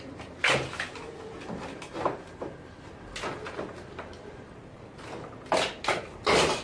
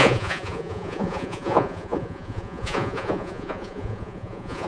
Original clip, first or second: first